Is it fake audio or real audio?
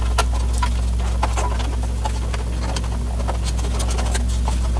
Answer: real